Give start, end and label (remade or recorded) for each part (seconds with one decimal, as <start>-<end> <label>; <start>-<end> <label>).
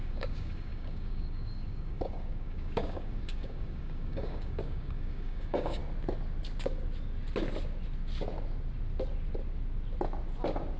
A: 0.0-5.8 remade; 5.8-10.8 recorded